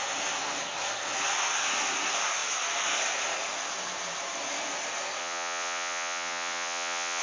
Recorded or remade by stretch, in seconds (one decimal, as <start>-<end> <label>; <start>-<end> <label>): 0.0-5.2 recorded; 5.2-7.2 remade